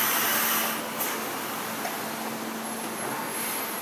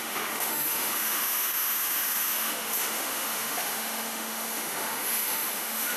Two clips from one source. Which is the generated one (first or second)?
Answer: second